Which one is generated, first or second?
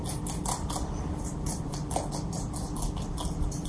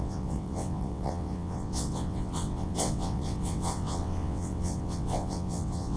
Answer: second